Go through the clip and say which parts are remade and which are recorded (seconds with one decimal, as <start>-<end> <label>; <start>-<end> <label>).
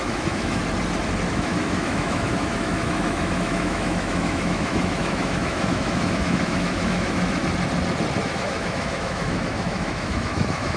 0.0-0.6 remade; 0.6-1.3 recorded; 1.3-7.4 remade; 7.4-8.2 recorded; 8.2-10.8 remade